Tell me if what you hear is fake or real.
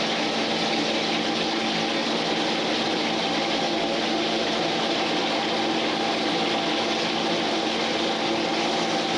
real